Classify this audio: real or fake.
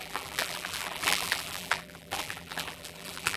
fake